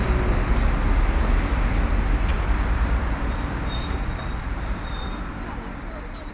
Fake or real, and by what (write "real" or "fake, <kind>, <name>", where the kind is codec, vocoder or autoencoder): real